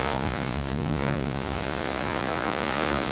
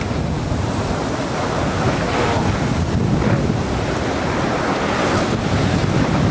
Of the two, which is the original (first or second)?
second